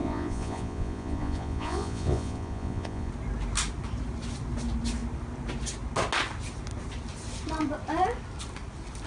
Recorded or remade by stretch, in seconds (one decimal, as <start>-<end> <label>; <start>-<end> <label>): 0.0-3.1 remade; 3.1-9.1 recorded